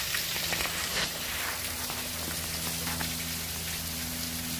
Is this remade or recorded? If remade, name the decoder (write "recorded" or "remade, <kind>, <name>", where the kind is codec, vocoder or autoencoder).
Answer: recorded